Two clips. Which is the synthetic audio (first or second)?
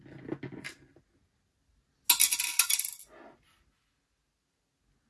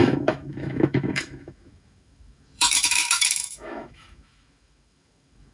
second